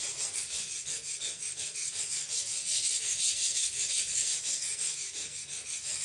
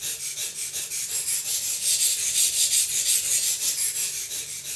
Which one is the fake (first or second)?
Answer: first